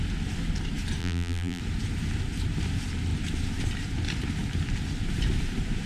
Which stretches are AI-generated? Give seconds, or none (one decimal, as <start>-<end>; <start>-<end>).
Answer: 1.0-1.6